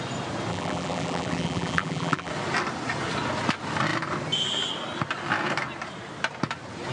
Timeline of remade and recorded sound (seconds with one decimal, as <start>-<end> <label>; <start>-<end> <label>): 0.0-0.5 recorded; 0.5-2.3 remade; 2.3-6.9 recorded